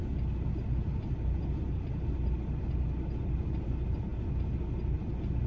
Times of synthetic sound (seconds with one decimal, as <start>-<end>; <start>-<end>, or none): none